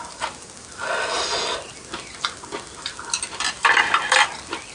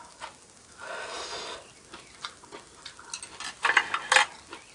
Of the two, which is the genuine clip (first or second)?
second